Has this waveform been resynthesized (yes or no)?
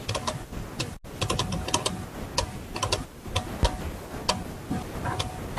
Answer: no